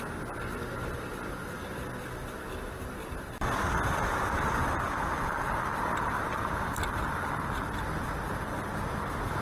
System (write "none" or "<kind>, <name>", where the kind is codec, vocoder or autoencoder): none